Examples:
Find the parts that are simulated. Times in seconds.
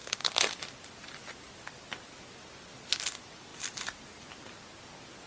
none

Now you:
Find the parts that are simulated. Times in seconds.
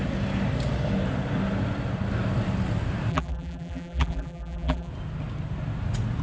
3.1-4.9 (vocoder, BigVGAN v2)